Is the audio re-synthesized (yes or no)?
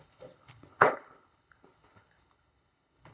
yes